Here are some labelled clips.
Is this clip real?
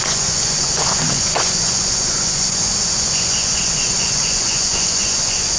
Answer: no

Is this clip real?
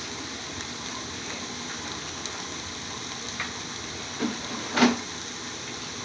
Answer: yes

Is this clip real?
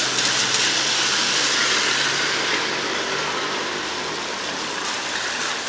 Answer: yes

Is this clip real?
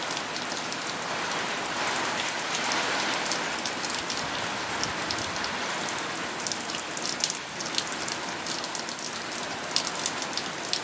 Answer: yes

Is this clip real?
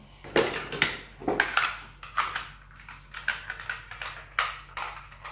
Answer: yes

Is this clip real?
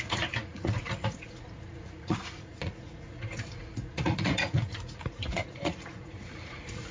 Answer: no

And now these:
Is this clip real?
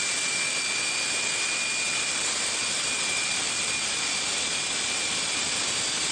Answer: yes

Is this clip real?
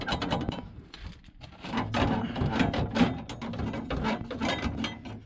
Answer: yes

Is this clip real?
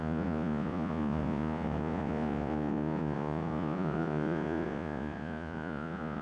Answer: no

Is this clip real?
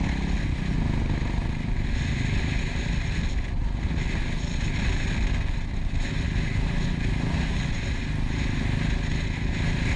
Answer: yes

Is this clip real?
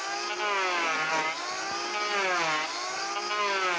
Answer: yes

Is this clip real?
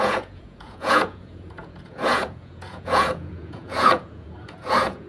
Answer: no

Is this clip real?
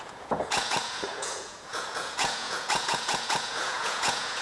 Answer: no